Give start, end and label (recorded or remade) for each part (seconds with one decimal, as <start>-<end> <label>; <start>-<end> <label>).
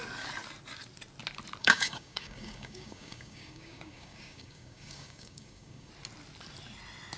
0.0-1.6 recorded; 1.6-5.9 remade; 5.9-7.2 recorded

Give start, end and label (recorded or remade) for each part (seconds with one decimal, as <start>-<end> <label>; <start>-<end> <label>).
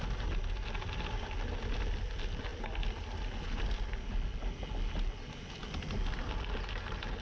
0.0-7.2 recorded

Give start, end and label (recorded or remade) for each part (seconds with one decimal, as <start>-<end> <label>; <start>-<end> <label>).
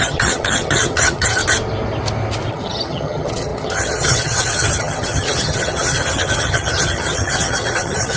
0.0-1.4 remade; 1.4-2.5 recorded; 2.5-8.2 remade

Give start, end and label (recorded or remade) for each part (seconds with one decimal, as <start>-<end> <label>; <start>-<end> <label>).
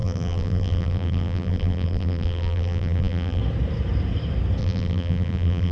0.0-3.4 remade; 3.4-4.6 recorded; 4.6-5.7 remade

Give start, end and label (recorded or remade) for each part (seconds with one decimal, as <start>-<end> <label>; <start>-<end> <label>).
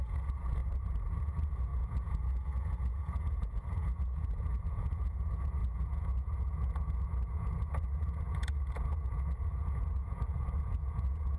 0.0-0.6 remade; 0.6-1.2 recorded; 1.2-11.4 remade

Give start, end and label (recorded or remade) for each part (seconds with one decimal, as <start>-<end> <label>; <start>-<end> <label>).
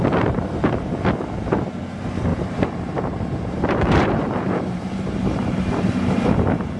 0.0-2.3 recorded; 2.3-6.8 remade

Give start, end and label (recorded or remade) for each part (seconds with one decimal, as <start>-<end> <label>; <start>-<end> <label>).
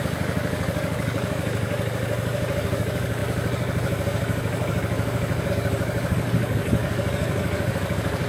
0.0-8.3 remade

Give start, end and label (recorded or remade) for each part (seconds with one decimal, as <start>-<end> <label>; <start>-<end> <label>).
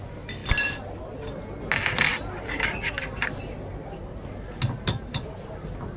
0.0-6.0 recorded